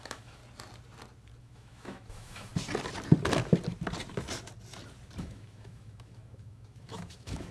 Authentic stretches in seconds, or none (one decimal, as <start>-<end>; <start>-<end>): 0.4-1.4; 2.5-5.2